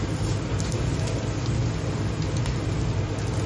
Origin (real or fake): real